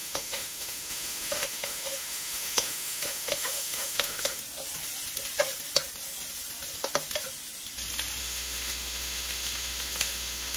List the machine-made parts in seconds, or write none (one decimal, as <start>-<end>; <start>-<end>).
0.0-4.4; 8.2-10.6